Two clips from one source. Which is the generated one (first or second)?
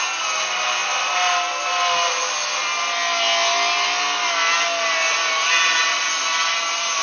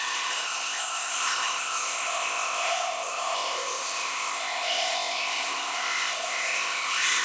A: second